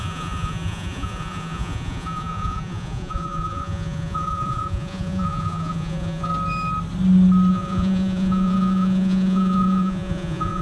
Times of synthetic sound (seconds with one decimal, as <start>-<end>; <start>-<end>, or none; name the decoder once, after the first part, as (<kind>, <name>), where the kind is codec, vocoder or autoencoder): 0.0-6.3 (vocoder, Vocos); 7.5-10.6